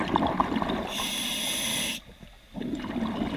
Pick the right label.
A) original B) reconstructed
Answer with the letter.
A